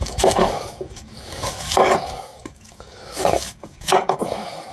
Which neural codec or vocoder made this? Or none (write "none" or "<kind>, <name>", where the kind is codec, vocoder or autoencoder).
codec, DAC